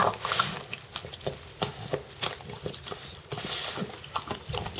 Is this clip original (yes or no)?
yes